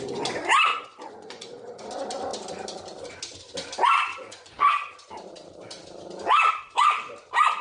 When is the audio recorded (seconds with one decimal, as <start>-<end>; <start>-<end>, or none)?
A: 0.0-0.7; 1.8-4.1; 4.7-7.6